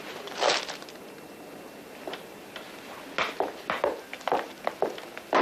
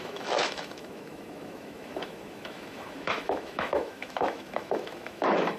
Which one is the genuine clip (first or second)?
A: first